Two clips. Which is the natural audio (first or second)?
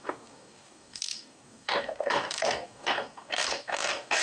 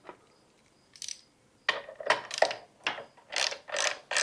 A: second